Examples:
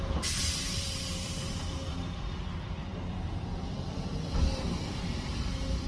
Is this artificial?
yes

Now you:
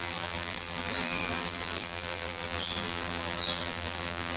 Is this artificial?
yes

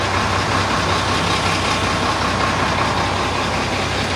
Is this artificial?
no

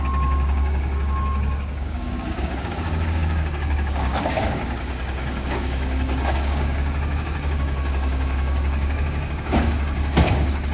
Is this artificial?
yes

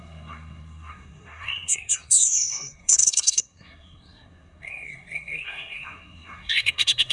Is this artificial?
yes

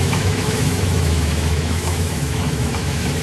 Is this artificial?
yes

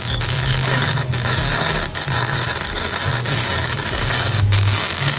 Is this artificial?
yes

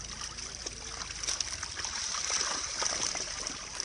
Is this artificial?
no